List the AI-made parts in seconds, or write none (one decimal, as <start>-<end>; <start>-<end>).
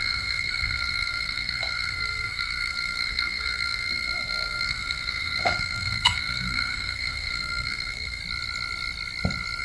0.0-8.2